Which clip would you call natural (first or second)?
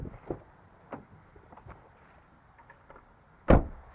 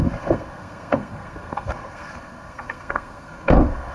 first